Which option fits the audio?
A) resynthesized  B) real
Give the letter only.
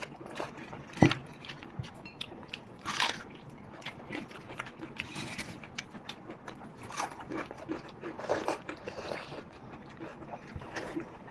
A